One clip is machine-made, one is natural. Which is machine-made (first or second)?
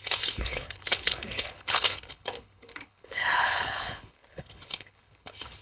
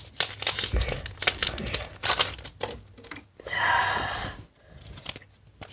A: first